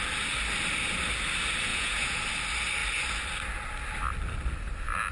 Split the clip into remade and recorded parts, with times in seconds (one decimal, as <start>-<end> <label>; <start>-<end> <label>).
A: 0.0-1.7 recorded; 1.7-2.2 remade; 2.2-5.1 recorded